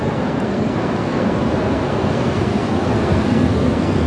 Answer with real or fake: fake